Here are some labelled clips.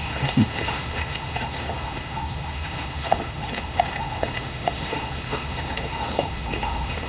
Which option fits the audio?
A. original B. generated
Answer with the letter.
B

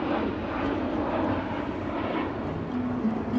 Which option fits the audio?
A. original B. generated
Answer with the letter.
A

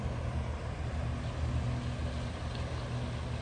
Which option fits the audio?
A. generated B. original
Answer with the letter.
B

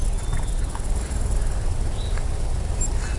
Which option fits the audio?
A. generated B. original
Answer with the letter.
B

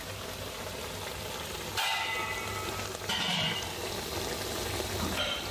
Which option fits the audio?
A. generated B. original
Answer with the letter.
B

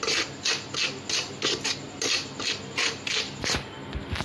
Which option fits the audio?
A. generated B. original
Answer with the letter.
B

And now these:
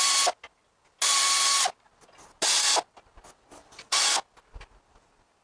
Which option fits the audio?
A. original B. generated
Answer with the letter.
A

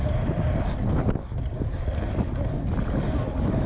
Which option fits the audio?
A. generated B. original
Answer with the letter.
B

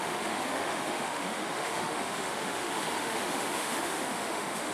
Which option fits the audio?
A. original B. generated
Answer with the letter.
B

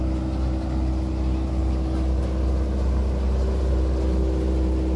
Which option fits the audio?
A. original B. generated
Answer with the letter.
A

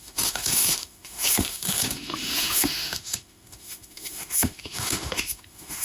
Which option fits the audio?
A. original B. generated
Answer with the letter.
B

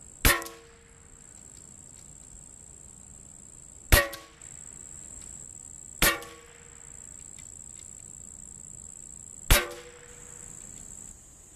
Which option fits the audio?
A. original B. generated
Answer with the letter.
A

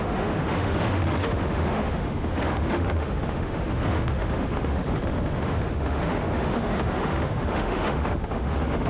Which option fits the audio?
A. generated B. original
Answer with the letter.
A